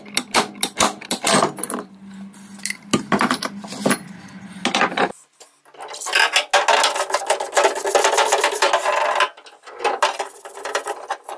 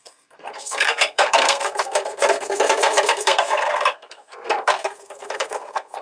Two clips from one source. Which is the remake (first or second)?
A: second